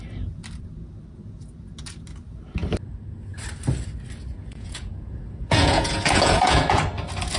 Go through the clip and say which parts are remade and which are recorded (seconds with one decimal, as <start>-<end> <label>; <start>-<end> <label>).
0.0-4.3 recorded; 4.3-6.8 remade; 6.8-7.4 recorded